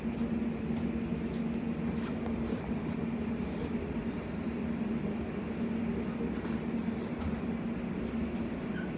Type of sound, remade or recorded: recorded